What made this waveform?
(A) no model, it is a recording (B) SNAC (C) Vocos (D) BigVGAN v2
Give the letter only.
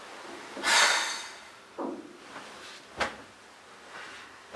A